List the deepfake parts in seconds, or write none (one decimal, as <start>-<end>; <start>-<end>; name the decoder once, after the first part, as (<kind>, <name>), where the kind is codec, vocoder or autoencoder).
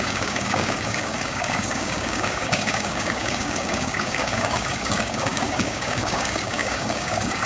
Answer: 0.0-7.5 (codec, DAC)